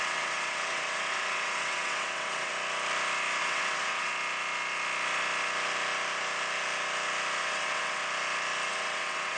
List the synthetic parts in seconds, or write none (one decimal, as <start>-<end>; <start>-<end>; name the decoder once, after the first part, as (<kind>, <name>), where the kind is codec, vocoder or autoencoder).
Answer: 0.0-2.5 (vocoder, WaveNeXt); 3.4-4.1; 7.4-8.0; 8.7-9.4